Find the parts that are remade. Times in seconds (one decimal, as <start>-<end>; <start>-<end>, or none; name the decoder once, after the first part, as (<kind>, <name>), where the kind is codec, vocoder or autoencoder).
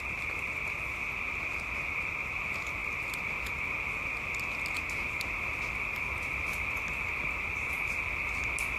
none